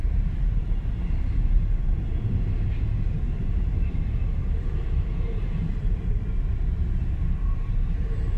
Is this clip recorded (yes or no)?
no